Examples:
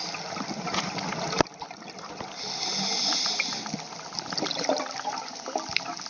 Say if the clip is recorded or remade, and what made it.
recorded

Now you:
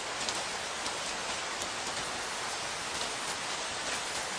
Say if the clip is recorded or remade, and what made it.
recorded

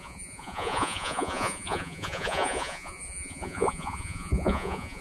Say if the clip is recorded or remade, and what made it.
remade, vocoder, Vocos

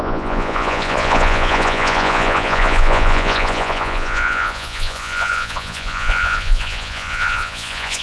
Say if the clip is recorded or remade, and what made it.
remade, vocoder, Vocos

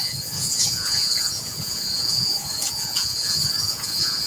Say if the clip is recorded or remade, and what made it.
remade, vocoder, Vocos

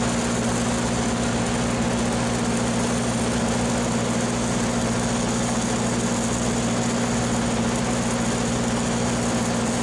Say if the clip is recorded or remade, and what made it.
recorded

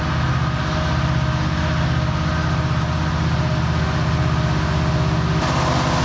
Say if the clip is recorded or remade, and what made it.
recorded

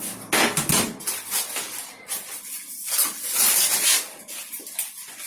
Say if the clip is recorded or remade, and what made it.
recorded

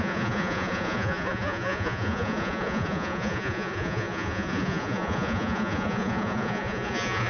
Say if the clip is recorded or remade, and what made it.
remade, vocoder, Vocos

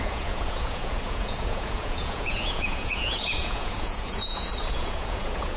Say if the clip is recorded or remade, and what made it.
remade, vocoder, Vocos